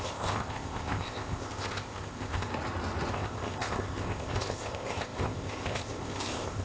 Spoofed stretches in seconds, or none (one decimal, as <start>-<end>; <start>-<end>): 0.0-2.5; 3.1-6.6